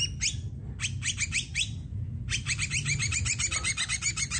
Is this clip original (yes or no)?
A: yes